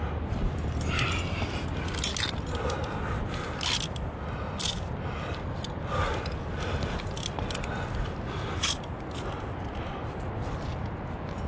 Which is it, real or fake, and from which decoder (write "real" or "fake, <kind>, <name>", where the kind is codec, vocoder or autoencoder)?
real